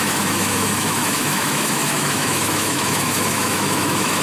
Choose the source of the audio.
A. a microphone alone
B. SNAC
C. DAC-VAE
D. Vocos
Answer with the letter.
C